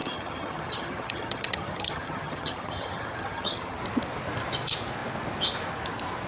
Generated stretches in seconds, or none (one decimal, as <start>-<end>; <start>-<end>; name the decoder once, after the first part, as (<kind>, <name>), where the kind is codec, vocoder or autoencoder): 0.0-3.8 (vocoder, HiFi-GAN)